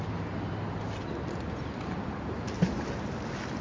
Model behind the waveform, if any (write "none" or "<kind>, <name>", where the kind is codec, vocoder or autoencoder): none